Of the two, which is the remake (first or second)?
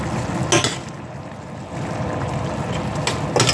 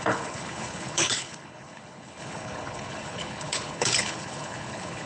second